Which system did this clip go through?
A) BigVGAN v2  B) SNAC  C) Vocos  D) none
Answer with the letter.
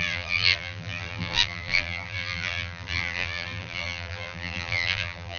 A